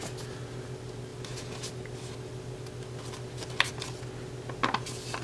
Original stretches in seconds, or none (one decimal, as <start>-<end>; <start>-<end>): 0.0-5.2